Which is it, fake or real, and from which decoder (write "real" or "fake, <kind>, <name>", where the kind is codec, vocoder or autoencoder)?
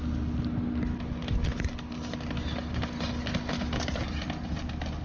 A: real